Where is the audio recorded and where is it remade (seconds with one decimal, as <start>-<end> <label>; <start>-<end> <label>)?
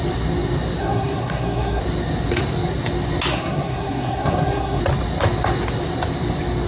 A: 0.0-0.8 recorded; 0.8-1.8 remade; 1.8-3.3 recorded; 3.3-4.8 remade; 4.8-6.7 recorded